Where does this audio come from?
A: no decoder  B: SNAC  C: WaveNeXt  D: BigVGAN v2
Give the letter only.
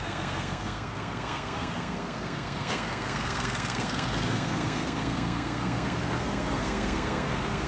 B